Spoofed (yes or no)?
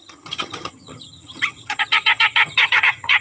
yes